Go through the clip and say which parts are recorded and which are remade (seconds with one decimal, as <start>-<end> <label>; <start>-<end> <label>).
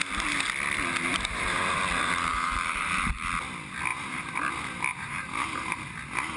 0.0-1.1 recorded; 1.1-1.8 remade; 1.8-2.3 recorded; 2.3-3.1 remade; 3.1-3.9 recorded; 3.9-4.5 remade; 4.5-4.9 recorded; 4.9-5.8 remade; 5.8-6.4 recorded